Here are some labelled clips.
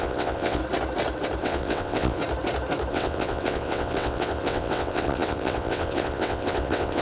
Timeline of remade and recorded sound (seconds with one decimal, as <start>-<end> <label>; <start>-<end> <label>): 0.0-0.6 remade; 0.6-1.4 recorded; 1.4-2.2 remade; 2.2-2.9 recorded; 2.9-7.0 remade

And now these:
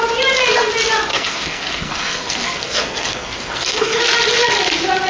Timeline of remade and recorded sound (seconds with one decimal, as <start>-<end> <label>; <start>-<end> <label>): 0.0-1.1 recorded; 1.1-4.0 remade; 4.0-5.1 recorded

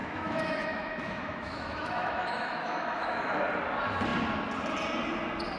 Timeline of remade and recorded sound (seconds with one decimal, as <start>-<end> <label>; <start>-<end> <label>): 0.0-3.4 remade; 3.4-5.6 recorded

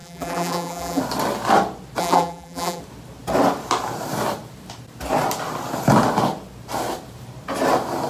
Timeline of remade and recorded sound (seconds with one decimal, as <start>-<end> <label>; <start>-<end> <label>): 0.0-1.0 remade; 1.0-2.0 recorded; 2.0-2.8 remade; 2.8-8.1 recorded

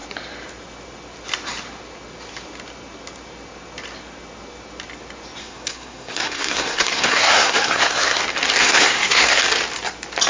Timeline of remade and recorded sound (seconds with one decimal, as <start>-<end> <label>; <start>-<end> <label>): 0.0-5.4 recorded; 5.4-8.2 remade; 8.2-8.6 recorded; 8.6-9.4 remade; 9.4-10.3 recorded